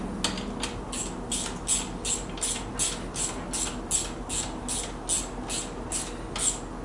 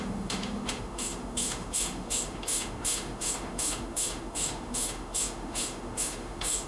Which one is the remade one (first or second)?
second